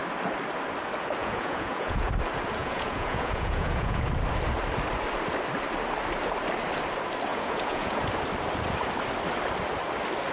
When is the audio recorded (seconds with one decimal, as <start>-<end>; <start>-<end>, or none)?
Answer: 0.0-1.2; 2.1-2.6; 4.1-7.3; 8.0-10.3